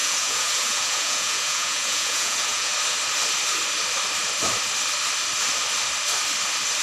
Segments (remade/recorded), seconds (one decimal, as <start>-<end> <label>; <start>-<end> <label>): 0.0-2.7 remade; 2.7-6.8 recorded